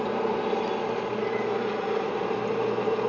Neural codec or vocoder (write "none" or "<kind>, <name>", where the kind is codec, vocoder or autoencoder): none